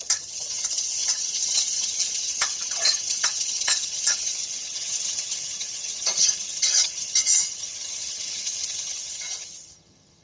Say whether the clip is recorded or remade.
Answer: remade